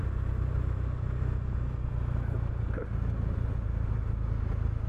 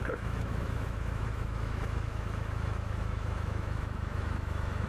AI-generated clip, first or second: second